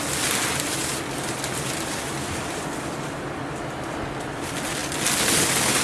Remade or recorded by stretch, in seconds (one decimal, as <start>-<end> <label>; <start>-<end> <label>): 0.0-5.8 recorded